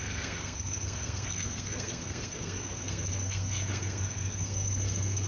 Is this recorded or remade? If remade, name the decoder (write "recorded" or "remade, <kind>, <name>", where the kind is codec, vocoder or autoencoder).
remade, codec, SNAC